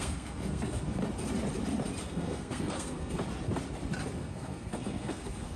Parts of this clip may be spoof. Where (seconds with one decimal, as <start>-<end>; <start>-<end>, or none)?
0.0-1.0; 2.0-3.2; 4.1-5.6